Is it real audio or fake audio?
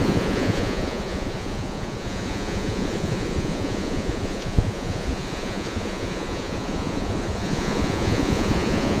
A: fake